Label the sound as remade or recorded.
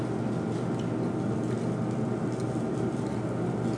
recorded